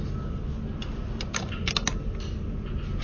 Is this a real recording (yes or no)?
yes